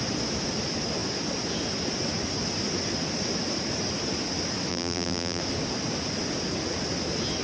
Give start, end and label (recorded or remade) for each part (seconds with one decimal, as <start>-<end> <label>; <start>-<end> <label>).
0.0-4.7 recorded; 4.7-5.4 remade; 5.4-7.4 recorded

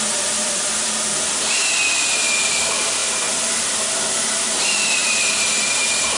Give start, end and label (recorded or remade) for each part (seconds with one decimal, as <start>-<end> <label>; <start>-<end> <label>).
0.0-3.0 remade; 3.0-4.6 recorded; 4.6-5.0 remade; 5.0-5.5 recorded; 5.5-6.2 remade